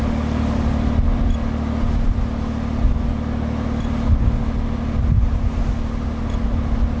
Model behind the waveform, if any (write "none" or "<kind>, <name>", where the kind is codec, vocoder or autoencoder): none